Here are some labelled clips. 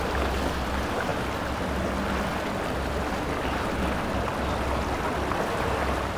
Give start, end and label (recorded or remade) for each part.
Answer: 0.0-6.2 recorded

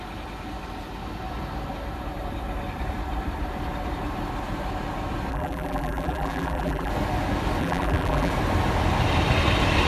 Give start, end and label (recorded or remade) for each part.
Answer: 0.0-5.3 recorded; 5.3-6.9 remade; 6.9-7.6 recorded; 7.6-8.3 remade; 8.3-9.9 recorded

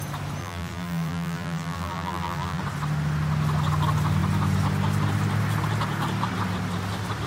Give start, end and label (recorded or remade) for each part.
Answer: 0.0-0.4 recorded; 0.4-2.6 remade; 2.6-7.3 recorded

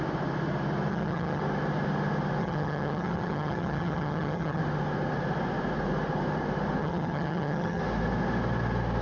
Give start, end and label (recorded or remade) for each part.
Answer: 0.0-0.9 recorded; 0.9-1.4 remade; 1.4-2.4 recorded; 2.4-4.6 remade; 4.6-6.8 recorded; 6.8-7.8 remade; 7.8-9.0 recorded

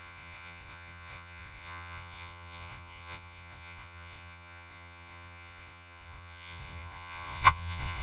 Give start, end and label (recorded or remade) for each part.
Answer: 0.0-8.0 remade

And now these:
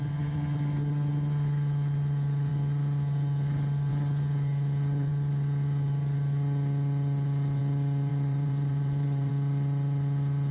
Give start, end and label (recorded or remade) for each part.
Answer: 0.0-8.1 recorded; 8.1-9.3 remade; 9.3-10.5 recorded